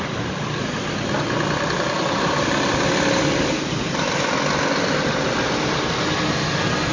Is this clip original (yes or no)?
yes